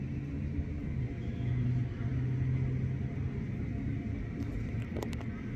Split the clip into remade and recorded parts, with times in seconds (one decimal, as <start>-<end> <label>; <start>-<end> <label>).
0.0-5.6 recorded